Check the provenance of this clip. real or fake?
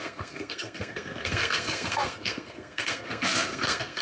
fake